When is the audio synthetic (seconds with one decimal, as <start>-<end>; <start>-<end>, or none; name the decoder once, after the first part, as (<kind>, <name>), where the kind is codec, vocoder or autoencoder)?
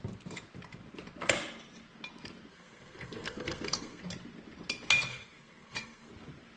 2.5-4.0 (codec, SNAC); 5.1-6.1